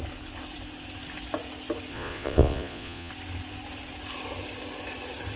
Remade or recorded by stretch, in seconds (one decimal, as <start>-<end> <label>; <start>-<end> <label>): 0.0-1.9 recorded; 1.9-3.1 remade; 3.1-5.4 recorded